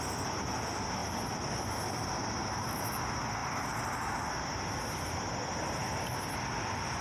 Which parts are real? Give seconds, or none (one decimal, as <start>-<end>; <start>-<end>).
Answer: 0.0-3.4; 4.4-7.0